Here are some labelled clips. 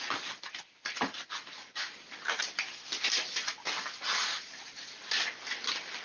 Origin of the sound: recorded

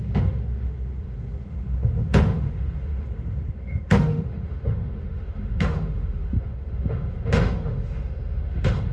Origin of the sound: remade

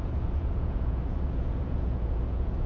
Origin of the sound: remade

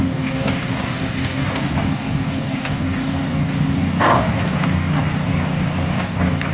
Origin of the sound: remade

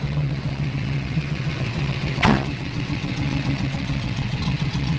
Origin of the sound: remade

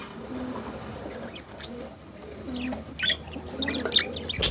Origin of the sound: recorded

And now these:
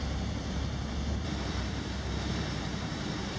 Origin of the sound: remade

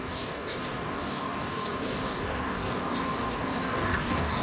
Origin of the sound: remade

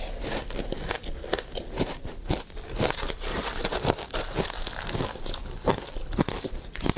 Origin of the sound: recorded